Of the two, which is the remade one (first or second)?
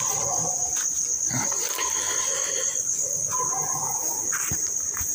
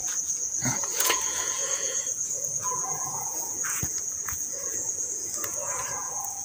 second